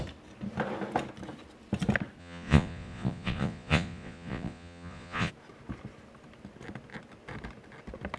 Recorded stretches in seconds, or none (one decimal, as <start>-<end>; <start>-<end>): 0.0-2.2; 5.3-8.2